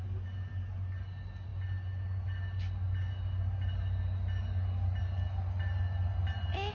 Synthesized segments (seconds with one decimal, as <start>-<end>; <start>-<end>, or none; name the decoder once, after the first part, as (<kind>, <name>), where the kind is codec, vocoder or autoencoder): none